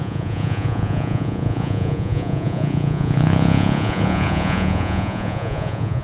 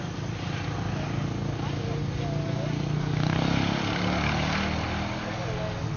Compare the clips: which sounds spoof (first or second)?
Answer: first